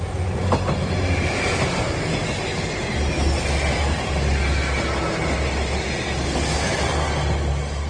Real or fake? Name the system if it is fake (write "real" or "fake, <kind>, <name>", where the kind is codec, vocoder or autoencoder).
real